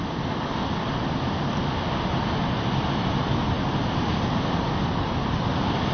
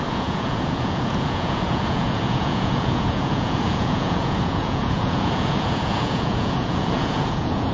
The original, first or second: first